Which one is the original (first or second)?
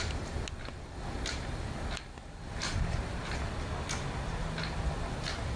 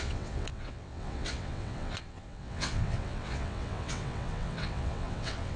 first